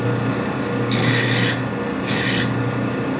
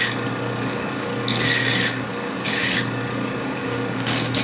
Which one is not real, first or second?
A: second